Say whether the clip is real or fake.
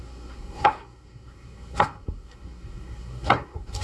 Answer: fake